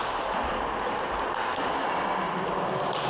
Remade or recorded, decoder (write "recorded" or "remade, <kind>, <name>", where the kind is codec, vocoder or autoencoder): recorded